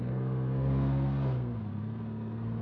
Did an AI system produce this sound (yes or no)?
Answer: yes